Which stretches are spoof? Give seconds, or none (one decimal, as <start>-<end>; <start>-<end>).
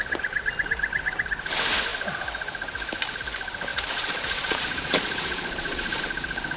3.7-6.0